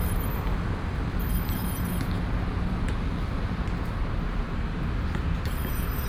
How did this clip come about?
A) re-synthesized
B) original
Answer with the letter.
A